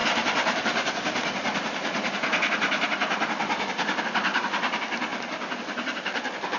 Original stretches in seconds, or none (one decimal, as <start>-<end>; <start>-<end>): 0.0-5.1; 5.6-6.6